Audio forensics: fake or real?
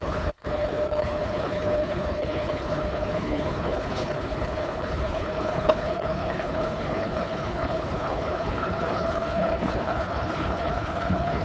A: fake